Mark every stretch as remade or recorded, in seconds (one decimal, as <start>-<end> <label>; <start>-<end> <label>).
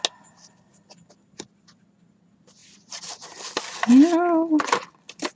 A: 0.0-5.4 recorded